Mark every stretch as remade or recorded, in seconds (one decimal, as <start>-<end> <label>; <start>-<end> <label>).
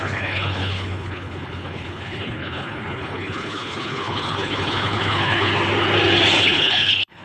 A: 0.0-5.5 remade; 5.5-6.4 recorded; 6.4-7.2 remade